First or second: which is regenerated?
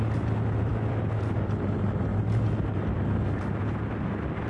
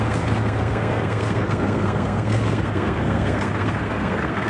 second